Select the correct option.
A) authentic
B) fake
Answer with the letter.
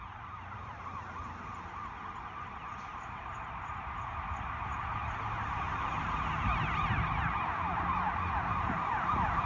A